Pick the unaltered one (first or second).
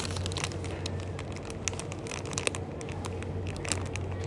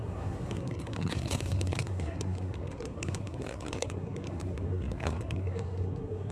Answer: first